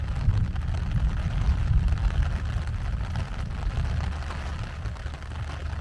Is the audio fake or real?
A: real